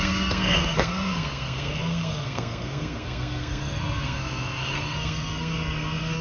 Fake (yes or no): yes